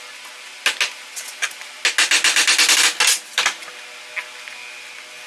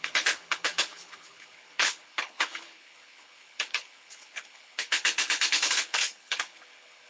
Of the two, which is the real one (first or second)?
first